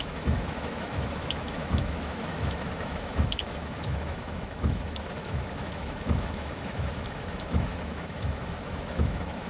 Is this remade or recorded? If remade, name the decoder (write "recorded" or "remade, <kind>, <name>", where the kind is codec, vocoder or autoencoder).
remade, autoencoder, DAC-VAE